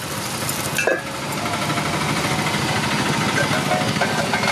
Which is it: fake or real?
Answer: real